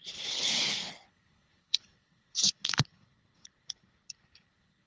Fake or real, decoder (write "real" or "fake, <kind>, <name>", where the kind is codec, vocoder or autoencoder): fake, codec, HILCodec